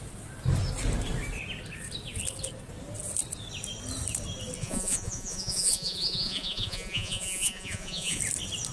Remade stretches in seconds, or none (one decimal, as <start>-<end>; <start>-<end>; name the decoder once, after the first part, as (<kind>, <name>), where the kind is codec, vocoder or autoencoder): 4.6-8.2 (vocoder, Vocos)